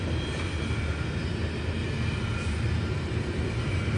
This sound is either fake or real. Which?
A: real